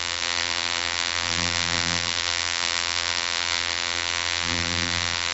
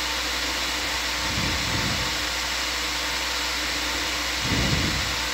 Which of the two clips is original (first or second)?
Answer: second